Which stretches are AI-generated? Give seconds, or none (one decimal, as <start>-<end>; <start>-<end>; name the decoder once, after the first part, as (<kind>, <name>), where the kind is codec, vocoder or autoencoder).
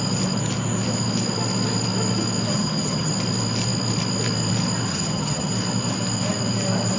2.5-3.1 (vocoder, HiFi-GAN); 4.9-5.5